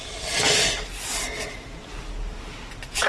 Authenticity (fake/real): real